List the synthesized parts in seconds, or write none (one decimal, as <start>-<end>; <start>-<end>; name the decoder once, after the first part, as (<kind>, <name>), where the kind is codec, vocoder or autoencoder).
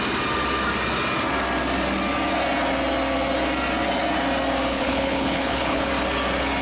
4.7-5.9 (codec, HILCodec)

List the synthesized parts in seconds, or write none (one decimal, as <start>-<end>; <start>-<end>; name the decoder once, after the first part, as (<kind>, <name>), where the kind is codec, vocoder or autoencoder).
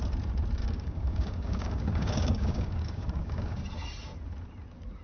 0.6-3.6 (codec, DAC)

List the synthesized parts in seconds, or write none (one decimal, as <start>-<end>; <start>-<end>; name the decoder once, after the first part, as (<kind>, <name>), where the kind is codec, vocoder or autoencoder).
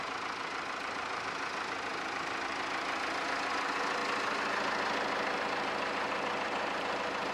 none